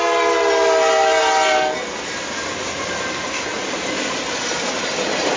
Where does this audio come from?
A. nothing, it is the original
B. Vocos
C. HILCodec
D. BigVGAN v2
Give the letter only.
A